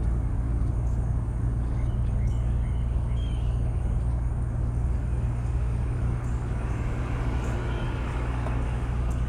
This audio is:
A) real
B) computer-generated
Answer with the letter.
B